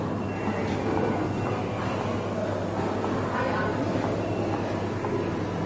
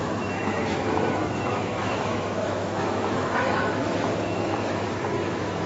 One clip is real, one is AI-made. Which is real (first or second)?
first